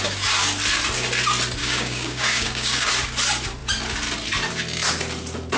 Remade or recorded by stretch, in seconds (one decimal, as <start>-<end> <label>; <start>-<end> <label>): 0.0-1.6 recorded; 1.6-2.9 remade; 2.9-5.6 recorded